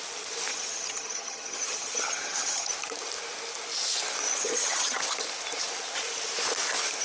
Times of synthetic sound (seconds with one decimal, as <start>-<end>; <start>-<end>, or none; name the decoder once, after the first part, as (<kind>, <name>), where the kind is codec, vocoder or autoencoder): 0.5-2.7 (vocoder, HiFi-GAN); 4.3-5.0

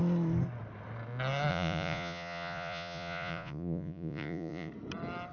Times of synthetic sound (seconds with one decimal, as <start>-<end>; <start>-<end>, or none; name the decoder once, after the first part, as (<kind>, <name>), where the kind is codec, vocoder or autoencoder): 1.5-4.7 (vocoder, Vocos)

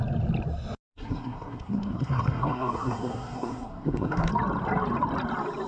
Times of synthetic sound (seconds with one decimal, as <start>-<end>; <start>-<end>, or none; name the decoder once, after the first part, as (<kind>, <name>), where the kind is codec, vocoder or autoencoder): 0.9-4.3 (codec, SNAC)

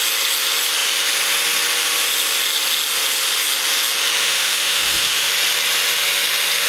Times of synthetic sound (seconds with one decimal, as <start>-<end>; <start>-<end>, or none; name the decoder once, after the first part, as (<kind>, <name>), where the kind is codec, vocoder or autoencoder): 4.2-5.3 (autoencoder, DAC-VAE)

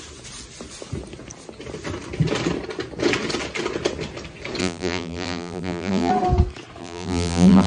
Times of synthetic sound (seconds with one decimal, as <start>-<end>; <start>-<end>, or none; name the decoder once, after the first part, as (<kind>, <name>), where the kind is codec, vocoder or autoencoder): 4.6-6.1 (vocoder, BigVGAN v2); 6.8-7.7

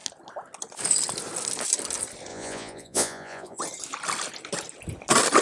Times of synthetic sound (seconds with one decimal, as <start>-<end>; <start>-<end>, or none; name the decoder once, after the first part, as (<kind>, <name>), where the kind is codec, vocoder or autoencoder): 2.3-3.6 (vocoder, Vocos)

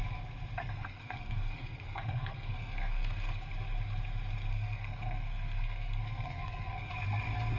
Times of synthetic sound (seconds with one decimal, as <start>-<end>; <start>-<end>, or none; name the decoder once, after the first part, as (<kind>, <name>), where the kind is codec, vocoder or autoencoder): 0.6-3.5 (codec, SNAC); 4.5-6.9